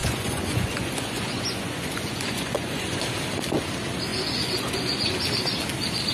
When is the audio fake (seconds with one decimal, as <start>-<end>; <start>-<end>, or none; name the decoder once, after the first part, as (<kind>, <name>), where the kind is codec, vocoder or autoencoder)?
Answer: 0.0-3.0 (vocoder, Vocos); 4.1-5.1